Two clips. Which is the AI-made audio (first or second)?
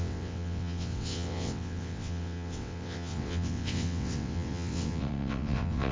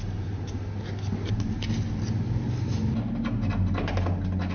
first